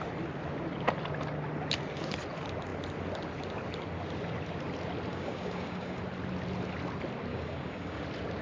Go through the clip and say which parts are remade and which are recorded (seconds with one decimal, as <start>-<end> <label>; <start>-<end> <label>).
0.0-5.1 recorded; 5.1-6.0 remade; 6.0-7.3 recorded; 7.3-8.0 remade; 8.0-8.4 recorded